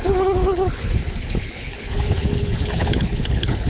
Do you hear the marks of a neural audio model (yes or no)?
yes